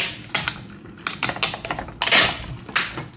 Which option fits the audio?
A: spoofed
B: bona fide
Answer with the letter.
B